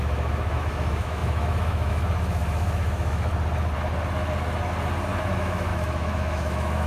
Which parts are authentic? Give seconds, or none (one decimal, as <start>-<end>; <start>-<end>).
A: 3.3-5.2